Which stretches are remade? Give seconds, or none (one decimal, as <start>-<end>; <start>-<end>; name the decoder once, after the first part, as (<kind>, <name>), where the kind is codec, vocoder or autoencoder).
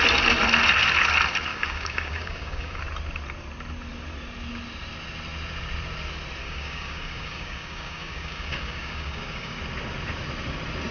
1.5-2.8 (codec, DAC); 6.4-9.6